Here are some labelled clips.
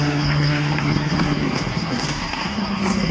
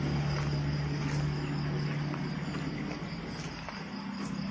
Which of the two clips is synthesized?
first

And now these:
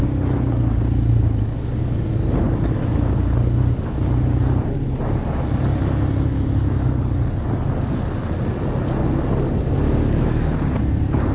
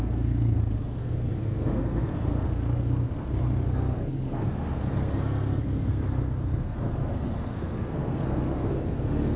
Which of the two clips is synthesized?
second